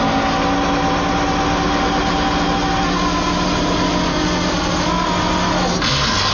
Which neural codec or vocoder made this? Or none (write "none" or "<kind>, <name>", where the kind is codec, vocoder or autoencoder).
none